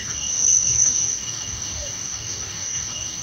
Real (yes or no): no